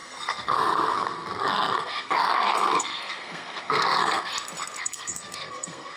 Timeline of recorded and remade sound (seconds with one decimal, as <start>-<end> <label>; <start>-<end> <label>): 0.0-4.3 remade; 4.3-4.8 recorded; 4.8-6.0 remade